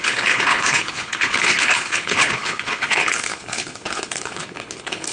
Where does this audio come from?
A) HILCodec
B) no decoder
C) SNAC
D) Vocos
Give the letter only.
A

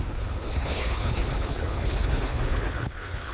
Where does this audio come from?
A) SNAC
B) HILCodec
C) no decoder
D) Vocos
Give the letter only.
B